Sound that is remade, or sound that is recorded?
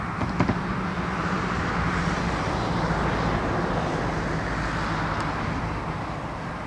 recorded